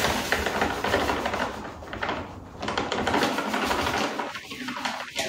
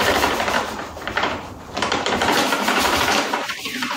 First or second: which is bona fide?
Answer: first